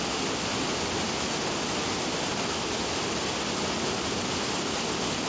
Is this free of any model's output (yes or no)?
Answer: yes